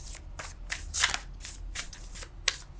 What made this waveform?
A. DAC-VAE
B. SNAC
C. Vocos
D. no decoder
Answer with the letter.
D